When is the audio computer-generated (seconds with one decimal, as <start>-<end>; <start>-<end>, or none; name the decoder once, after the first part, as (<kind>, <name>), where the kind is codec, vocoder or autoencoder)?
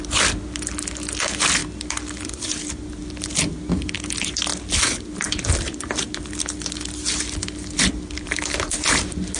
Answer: none